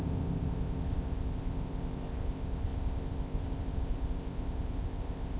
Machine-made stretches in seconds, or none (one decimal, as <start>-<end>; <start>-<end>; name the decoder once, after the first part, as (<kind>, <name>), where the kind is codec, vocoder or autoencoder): 0.0-5.4 (codec, ZipCodec)